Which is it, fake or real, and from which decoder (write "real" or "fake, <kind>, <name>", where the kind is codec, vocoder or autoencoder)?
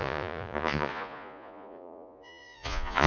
fake, vocoder, Vocos